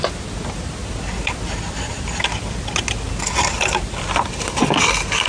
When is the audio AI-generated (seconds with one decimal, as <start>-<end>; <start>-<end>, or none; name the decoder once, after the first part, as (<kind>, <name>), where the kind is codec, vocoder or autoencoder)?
none